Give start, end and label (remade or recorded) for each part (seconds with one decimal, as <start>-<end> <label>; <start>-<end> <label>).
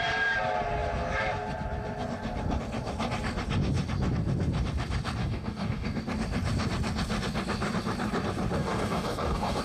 0.0-5.2 recorded; 5.2-6.0 remade; 6.0-8.6 recorded; 8.6-9.6 remade